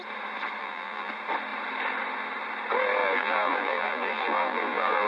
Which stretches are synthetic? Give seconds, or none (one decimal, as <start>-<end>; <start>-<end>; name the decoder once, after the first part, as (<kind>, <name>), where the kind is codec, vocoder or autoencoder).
0.6-1.1 (vocoder, BigVGAN v2); 3.0-5.1